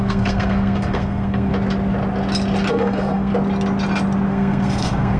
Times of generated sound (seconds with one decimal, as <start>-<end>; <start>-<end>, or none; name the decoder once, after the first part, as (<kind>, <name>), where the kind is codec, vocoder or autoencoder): 0.0-1.5 (codec, SNAC); 2.7-3.3; 4.3-5.2